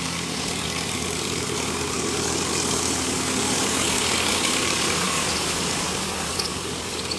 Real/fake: fake